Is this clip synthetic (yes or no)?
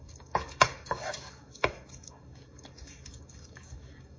yes